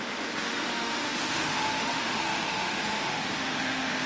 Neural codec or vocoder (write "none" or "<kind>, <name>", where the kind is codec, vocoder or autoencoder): autoencoder, DAC-VAE